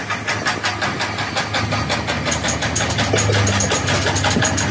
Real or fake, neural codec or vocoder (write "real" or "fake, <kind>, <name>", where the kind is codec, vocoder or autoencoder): real